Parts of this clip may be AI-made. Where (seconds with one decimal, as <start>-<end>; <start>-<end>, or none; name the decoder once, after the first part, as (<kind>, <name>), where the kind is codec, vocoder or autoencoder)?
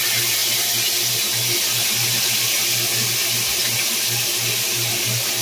none